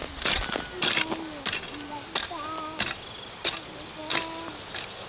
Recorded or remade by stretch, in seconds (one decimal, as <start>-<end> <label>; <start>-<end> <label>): 0.0-5.1 recorded

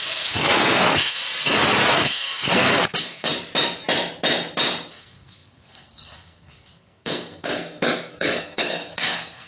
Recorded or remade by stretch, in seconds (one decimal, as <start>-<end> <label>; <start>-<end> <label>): 0.0-1.2 remade; 1.2-1.9 recorded; 1.9-3.3 remade; 3.3-4.9 recorded; 4.9-9.5 remade